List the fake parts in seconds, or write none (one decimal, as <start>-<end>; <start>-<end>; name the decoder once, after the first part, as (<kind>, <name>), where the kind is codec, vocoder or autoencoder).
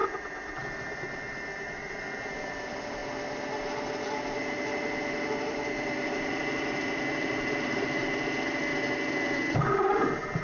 0.0-3.0 (vocoder, BigVGAN v2); 5.4-8.7